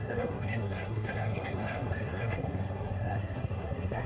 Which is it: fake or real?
fake